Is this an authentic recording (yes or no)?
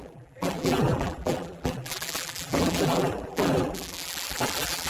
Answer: no